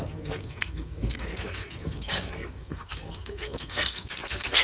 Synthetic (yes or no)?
yes